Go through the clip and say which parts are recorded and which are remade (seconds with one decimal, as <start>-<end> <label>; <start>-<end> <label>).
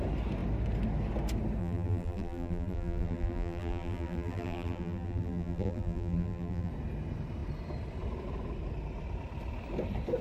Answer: 0.0-1.6 recorded; 1.6-6.7 remade; 6.7-10.2 recorded